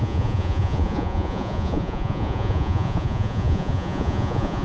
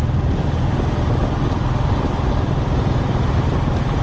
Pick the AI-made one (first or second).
first